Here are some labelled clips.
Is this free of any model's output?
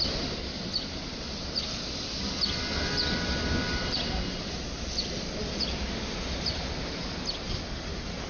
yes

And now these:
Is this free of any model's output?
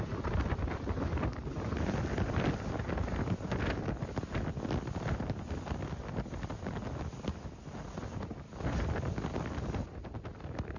yes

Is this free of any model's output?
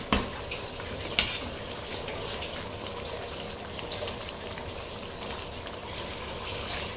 yes